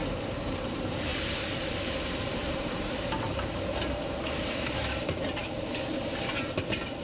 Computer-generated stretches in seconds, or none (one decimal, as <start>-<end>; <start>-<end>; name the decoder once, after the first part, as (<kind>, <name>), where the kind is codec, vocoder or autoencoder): 0.0-1.1 (vocoder, BigVGAN v2); 2.6-5.4